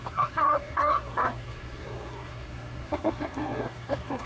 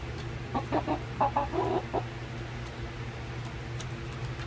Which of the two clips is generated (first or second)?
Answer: first